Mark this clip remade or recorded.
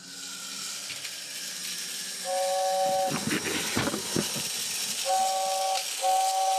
recorded